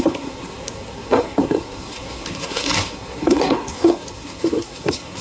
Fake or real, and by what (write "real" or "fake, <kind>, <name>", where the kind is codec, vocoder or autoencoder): fake, codec, SNAC